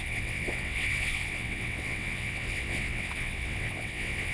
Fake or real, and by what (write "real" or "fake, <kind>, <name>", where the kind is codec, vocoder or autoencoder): fake, vocoder, WaveNeXt